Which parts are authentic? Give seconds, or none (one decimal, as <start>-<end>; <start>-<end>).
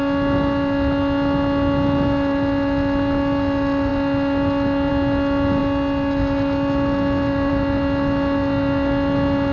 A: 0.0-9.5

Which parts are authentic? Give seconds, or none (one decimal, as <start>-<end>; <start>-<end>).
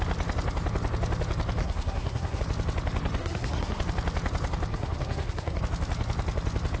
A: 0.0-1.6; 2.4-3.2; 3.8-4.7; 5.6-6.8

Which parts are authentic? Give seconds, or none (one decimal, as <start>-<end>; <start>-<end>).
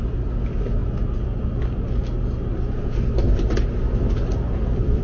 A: 0.0-5.0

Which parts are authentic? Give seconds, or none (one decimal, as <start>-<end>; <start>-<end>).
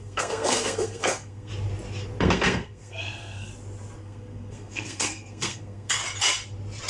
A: 1.5-2.2; 3.5-4.0; 6.0-6.9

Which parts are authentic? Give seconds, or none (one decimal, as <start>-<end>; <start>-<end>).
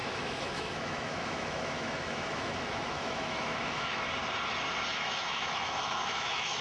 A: 4.0-4.9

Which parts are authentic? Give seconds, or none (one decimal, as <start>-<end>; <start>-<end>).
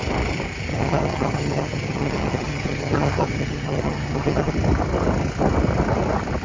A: 0.0-0.7; 4.5-6.4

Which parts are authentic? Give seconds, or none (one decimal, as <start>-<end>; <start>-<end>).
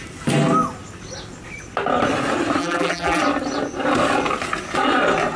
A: 0.0-2.6; 3.2-5.4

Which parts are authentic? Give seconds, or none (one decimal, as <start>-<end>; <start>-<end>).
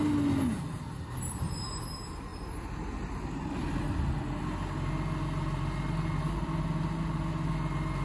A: 0.0-8.0